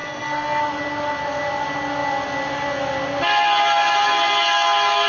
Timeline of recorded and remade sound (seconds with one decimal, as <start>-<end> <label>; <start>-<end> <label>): 0.0-0.6 remade; 0.6-5.1 recorded